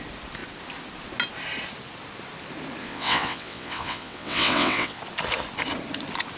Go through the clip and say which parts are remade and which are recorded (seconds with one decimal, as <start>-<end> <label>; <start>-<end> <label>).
0.0-2.8 recorded; 2.8-5.0 remade; 5.0-6.4 recorded